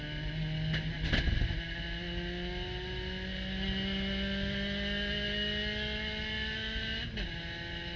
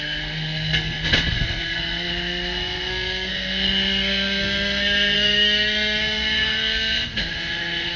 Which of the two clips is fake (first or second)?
second